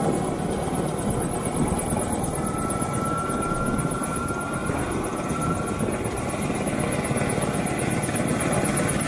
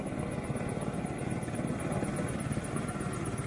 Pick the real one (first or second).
first